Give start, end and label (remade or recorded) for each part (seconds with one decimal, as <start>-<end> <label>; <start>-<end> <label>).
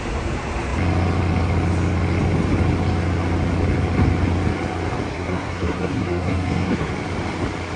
0.0-5.1 recorded; 5.1-6.9 remade; 6.9-7.8 recorded